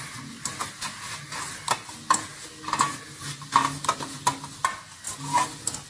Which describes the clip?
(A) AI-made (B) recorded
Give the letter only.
B